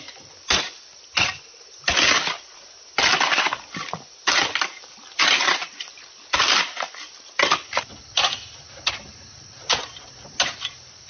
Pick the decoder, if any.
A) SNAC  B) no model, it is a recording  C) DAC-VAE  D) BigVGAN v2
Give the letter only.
B